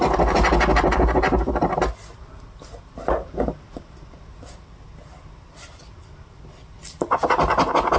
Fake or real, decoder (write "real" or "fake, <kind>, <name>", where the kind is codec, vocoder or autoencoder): real